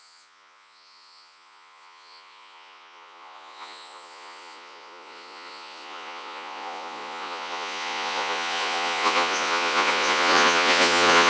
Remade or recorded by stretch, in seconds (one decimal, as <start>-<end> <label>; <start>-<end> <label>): 0.0-11.3 remade